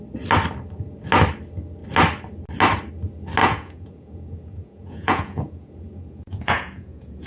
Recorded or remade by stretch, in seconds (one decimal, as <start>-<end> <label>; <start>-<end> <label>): 0.0-3.4 recorded; 3.4-7.3 remade